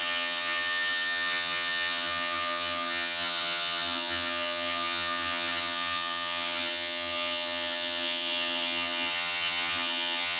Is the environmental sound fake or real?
fake